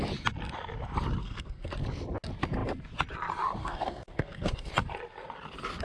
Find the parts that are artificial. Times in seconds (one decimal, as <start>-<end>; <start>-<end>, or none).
1.2-1.7; 3.6-4.7